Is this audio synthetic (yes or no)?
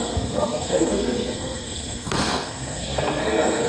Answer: yes